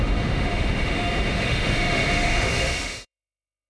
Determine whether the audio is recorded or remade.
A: remade